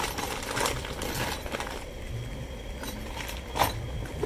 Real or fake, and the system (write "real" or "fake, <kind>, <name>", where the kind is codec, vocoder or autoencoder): real